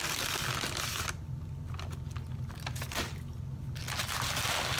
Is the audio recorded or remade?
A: recorded